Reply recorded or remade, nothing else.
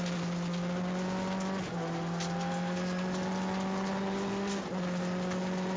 recorded